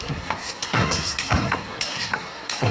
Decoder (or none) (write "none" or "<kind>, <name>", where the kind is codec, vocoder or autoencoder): codec, SNAC